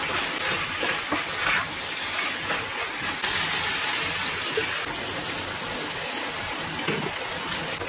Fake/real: real